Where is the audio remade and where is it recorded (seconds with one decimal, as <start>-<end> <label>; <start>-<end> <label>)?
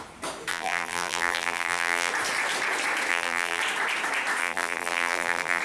0.0-0.5 recorded; 0.5-2.1 remade; 2.1-3.1 recorded; 3.1-3.6 remade; 3.6-4.4 recorded; 4.4-5.6 remade